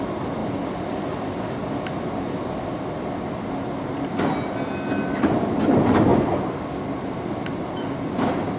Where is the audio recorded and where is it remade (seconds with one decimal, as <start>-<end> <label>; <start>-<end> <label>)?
0.0-8.6 recorded